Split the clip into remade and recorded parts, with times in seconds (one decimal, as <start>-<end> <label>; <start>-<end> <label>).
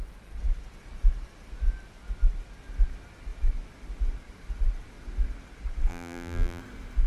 0.0-5.9 recorded; 5.9-6.6 remade; 6.6-7.1 recorded